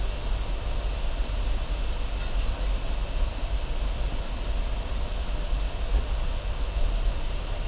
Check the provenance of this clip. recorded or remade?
recorded